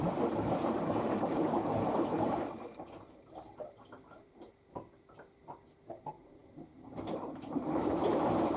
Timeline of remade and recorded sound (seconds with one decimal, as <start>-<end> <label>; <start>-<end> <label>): 0.0-8.6 remade